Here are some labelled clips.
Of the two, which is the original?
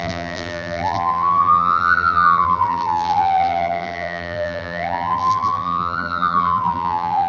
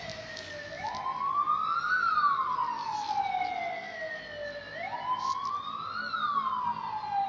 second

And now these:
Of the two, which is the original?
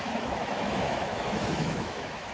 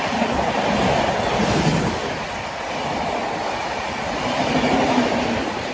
second